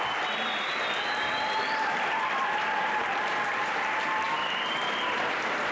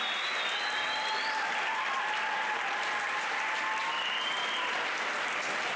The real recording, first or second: second